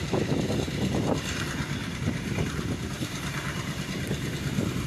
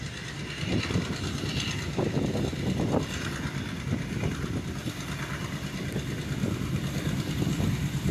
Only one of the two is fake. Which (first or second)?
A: first